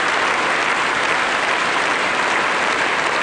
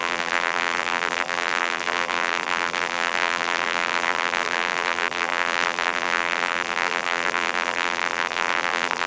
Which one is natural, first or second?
first